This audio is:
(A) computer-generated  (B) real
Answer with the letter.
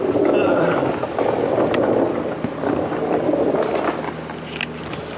B